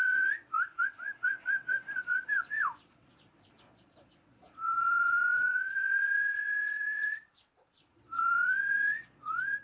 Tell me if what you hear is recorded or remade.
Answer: remade